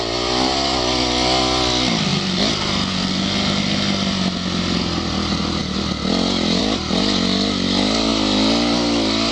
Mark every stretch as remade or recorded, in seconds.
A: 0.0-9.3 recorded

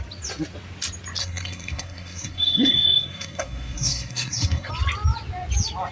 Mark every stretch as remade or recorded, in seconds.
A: 0.0-1.2 recorded; 1.2-4.7 remade; 4.7-5.9 recorded

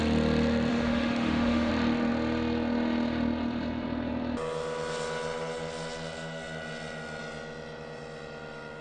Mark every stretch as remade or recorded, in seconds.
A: 0.0-0.7 recorded; 0.7-1.7 remade; 1.7-8.8 recorded

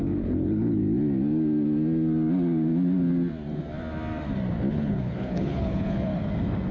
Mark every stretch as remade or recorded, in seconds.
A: 0.0-0.8 remade; 0.8-4.7 recorded; 4.7-6.1 remade; 6.1-6.7 recorded

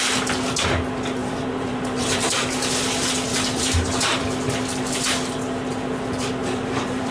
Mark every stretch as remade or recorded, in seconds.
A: 0.0-1.2 recorded; 1.2-2.5 remade; 2.5-3.3 recorded; 3.3-4.2 remade; 4.2-6.4 recorded; 6.4-7.1 remade

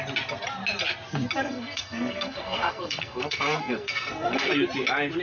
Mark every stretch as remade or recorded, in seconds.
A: 0.0-1.4 recorded; 1.4-4.5 remade; 4.5-5.2 recorded